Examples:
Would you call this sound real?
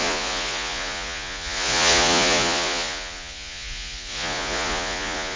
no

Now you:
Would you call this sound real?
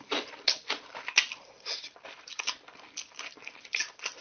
yes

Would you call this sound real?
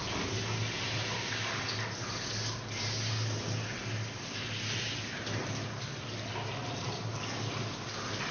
yes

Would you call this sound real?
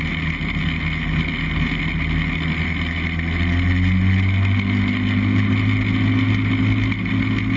yes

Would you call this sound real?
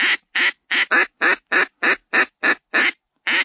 yes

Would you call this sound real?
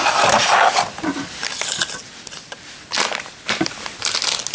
yes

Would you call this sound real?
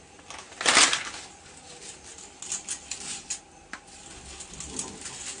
yes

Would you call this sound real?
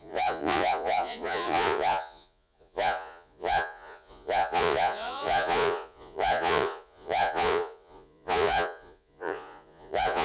no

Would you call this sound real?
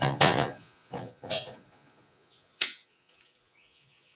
no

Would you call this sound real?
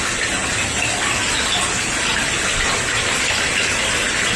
yes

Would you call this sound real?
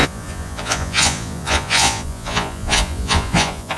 no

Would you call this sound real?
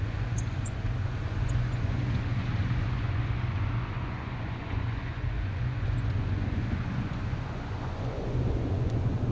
no